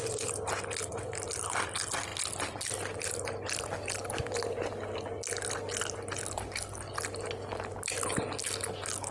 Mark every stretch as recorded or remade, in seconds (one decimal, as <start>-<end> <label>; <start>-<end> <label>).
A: 0.0-9.1 recorded